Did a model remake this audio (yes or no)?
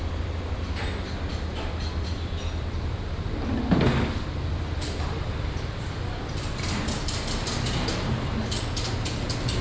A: no